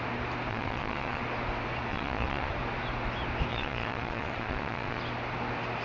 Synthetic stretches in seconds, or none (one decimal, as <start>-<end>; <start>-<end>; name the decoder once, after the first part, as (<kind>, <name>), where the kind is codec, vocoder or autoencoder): 0.5-1.2 (vocoder, Vocos); 1.9-2.5; 3.5-5.0